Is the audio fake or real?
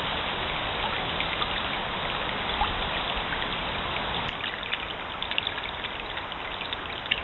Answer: real